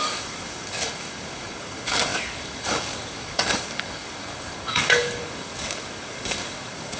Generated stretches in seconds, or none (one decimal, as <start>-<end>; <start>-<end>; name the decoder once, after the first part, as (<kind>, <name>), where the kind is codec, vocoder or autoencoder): 0.0-7.0 (codec, DAC)